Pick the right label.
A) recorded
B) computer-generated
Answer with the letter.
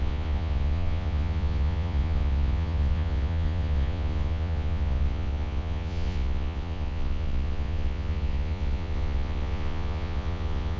B